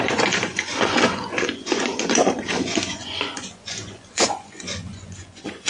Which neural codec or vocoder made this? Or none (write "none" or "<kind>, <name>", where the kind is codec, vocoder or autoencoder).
vocoder, Vocos